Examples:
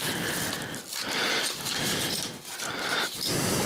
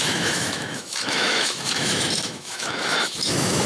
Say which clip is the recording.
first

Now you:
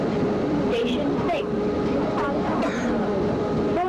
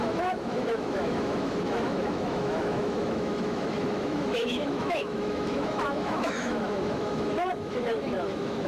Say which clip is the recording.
first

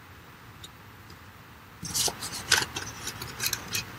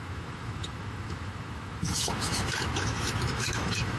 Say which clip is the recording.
first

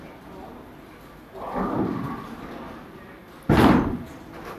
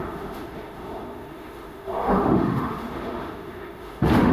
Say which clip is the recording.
first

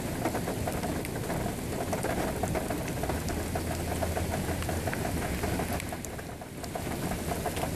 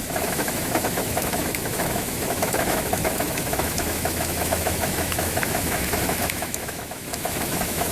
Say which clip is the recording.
first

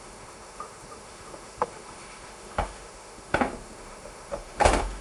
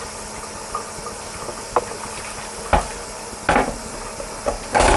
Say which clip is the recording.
second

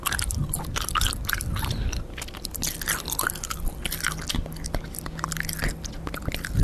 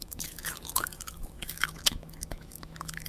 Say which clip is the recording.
first